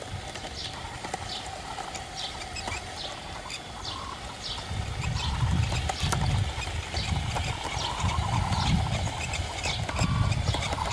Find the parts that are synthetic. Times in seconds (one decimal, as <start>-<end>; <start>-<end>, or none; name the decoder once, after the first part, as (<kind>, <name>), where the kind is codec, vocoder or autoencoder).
none